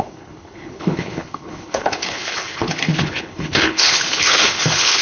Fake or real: fake